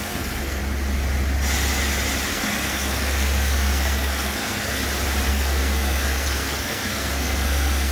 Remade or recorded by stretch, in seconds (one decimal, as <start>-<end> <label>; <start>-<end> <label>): 0.0-0.6 remade; 0.6-2.3 recorded; 2.3-4.8 remade; 4.8-5.3 recorded; 5.3-7.9 remade

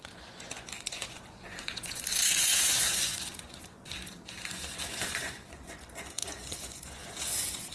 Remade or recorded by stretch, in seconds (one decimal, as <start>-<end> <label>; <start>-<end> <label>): 0.0-7.7 remade

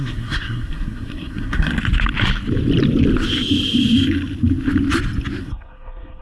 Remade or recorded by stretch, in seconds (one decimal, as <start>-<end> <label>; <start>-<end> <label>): 0.0-1.7 remade; 1.7-5.4 recorded; 5.4-6.2 remade

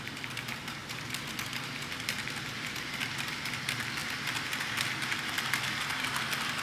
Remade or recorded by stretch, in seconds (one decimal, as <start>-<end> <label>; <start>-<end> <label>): 0.0-6.6 remade

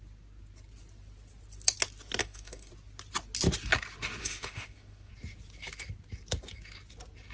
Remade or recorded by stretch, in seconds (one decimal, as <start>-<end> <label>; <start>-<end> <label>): 0.0-2.2 recorded; 2.2-2.7 remade; 2.7-4.2 recorded; 4.2-5.1 remade; 5.1-7.3 recorded

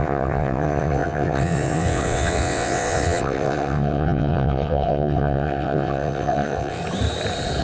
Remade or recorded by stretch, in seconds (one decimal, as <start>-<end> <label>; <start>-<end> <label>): 0.0-6.8 remade; 6.8-7.6 recorded